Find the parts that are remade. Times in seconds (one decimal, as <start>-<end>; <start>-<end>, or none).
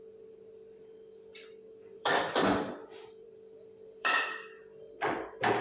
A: 0.0-2.3; 2.8-4.6